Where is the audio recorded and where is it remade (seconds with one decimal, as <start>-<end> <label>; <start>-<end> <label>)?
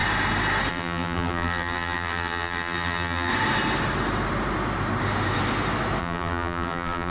0.0-0.7 recorded; 0.7-3.3 remade; 3.3-6.0 recorded; 6.0-7.1 remade